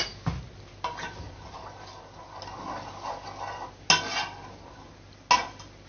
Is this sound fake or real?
real